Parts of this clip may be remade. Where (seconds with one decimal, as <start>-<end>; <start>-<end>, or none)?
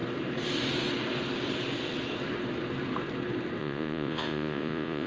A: 3.6-5.1